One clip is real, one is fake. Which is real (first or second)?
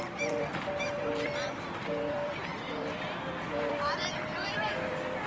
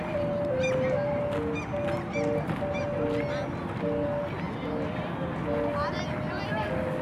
second